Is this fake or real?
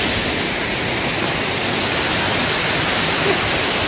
real